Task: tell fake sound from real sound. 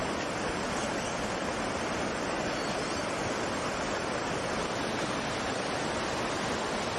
real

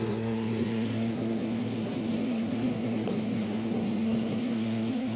fake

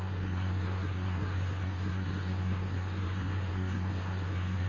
fake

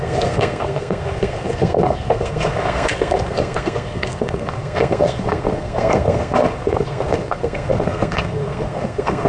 fake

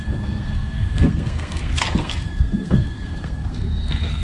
fake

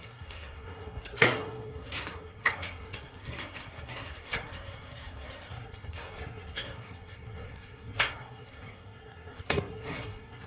fake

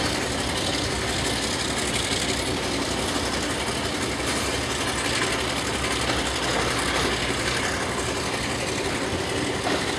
real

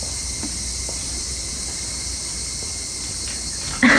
real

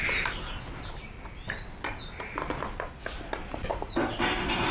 real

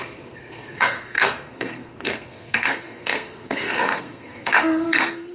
fake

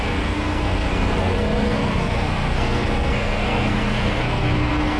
fake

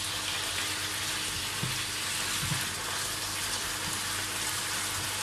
real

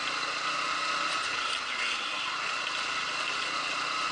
real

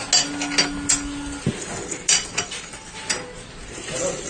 real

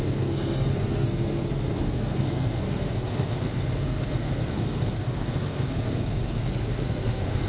fake